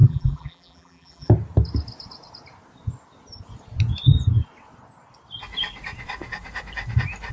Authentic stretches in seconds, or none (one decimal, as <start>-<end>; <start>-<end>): 1.3-7.3